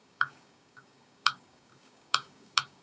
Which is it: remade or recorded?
remade